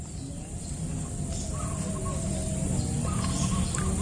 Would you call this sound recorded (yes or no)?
yes